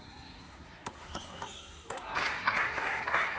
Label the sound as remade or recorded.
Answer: remade